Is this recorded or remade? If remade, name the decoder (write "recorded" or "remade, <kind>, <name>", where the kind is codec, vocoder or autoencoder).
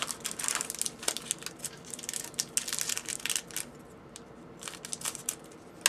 recorded